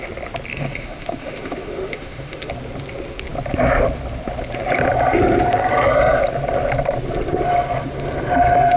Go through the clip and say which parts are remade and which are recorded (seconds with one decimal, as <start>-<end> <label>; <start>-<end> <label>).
0.0-0.5 recorded; 0.5-2.5 remade; 2.5-8.8 recorded